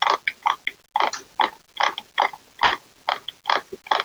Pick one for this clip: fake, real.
real